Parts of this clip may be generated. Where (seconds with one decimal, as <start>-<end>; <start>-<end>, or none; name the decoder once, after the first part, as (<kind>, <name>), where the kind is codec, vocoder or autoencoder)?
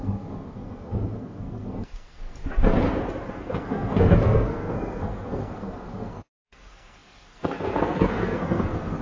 0.0-2.4 (codec, SNAC); 3.3-9.0